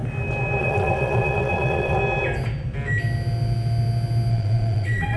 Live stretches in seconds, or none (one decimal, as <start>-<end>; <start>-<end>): 0.0-0.6; 2.0-4.3